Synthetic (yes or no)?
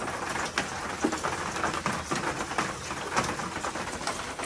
no